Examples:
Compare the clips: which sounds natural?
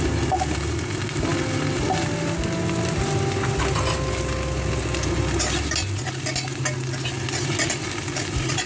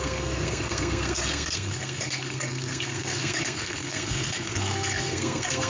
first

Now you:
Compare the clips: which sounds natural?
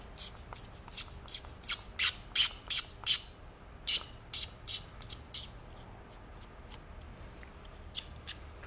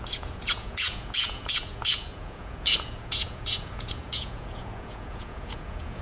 first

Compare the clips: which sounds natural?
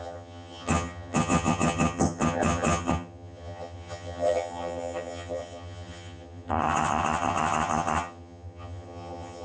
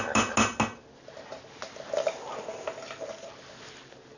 second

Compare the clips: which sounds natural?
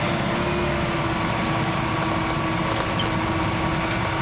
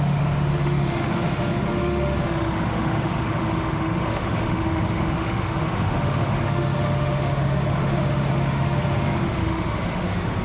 first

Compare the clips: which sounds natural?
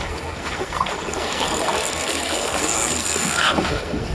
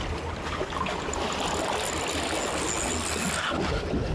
second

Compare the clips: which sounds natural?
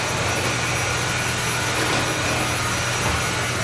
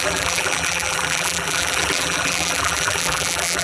first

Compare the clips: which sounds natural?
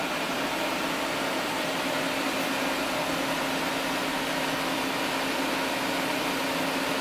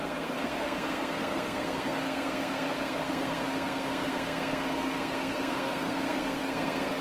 first